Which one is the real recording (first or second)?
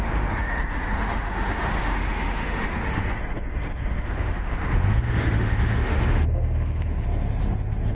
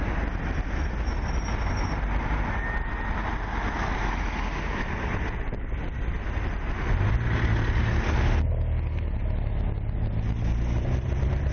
second